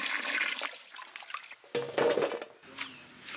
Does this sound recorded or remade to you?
recorded